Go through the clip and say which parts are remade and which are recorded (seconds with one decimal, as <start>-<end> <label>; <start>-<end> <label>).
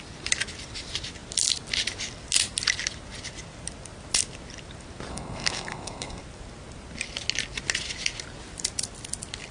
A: 0.0-5.1 recorded; 5.1-6.2 remade; 6.2-9.5 recorded